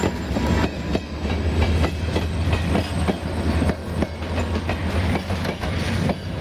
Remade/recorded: recorded